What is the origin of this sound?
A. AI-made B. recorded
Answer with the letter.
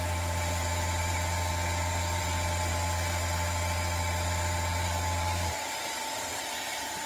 A